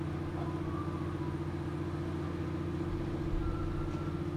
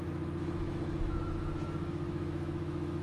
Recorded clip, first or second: first